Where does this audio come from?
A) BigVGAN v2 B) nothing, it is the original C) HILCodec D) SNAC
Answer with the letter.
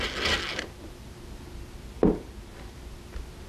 B